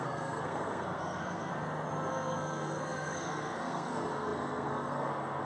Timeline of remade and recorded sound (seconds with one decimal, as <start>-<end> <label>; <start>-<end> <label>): 0.0-1.5 remade; 1.5-2.1 recorded; 2.1-5.4 remade